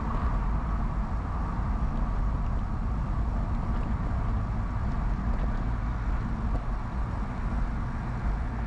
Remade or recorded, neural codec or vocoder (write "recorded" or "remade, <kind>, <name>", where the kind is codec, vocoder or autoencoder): recorded